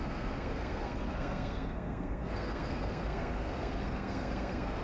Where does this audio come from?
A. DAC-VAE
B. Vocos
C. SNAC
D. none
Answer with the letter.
C